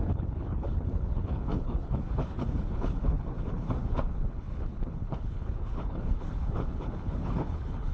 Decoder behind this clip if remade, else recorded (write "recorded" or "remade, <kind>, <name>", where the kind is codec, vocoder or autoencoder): remade, codec, HILCodec